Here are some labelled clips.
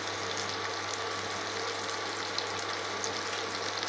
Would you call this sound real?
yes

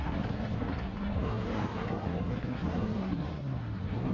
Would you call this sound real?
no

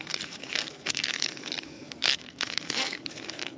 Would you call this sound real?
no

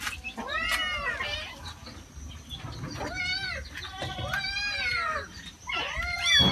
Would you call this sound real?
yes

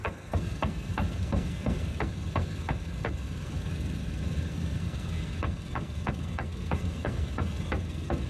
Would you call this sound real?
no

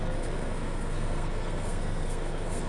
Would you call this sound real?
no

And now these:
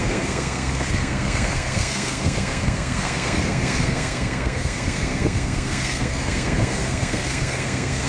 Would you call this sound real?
no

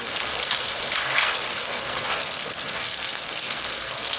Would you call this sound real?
no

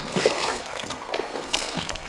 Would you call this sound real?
no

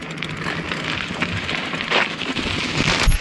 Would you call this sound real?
yes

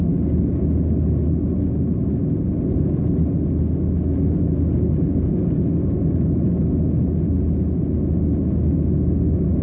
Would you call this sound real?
yes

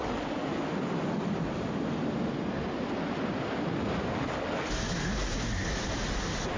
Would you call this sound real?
yes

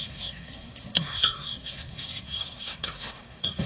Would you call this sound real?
no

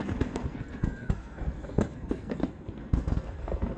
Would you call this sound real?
no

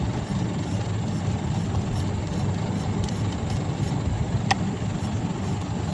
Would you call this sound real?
yes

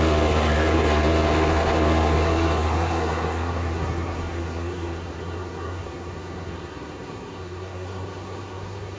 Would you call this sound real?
no